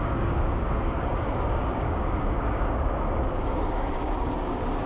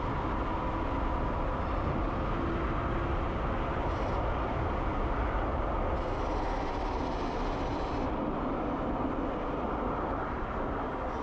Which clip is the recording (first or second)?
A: second